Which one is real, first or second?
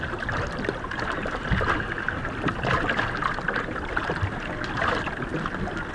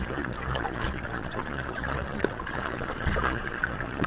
first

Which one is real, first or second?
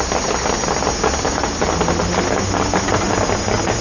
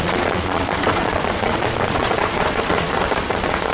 first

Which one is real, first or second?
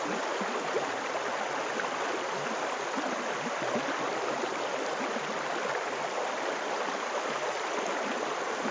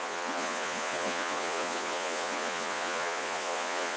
first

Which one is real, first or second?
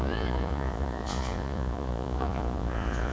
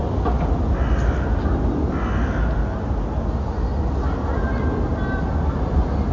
second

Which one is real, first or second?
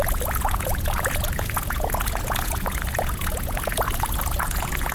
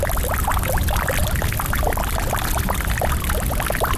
second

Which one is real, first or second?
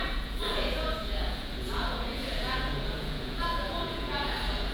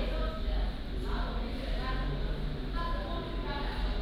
second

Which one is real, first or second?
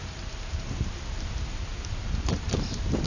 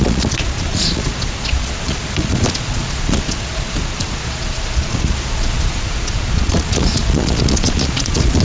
first